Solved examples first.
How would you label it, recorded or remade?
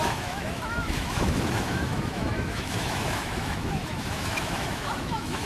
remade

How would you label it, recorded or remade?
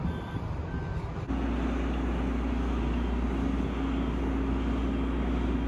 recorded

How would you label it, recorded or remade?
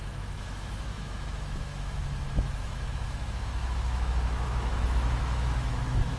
remade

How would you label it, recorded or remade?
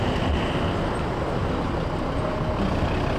recorded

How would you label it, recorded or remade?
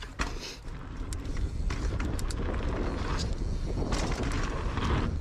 recorded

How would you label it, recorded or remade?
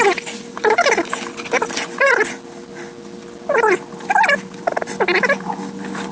recorded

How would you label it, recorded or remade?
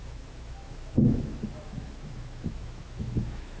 remade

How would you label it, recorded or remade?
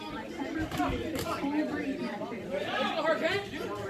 recorded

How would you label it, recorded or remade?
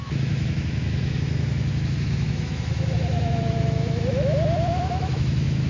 remade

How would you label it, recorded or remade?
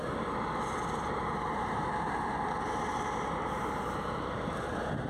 recorded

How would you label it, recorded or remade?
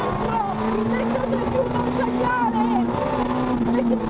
recorded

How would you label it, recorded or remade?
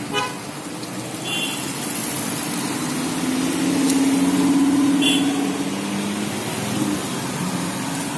recorded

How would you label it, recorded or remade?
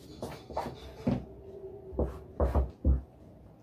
recorded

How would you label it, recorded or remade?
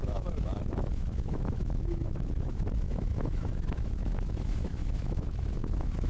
remade